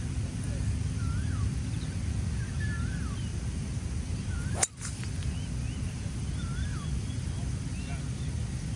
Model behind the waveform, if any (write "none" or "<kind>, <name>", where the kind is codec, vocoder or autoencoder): none